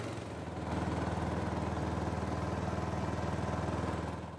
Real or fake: real